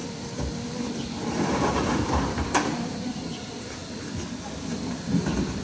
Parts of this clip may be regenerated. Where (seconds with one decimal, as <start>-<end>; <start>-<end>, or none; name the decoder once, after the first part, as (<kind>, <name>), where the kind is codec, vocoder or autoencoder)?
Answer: 1.3-3.8 (vocoder, BigVGAN v2); 4.9-5.6